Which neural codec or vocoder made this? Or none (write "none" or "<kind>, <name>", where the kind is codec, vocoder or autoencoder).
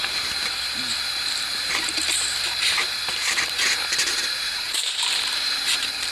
vocoder, BigVGAN v2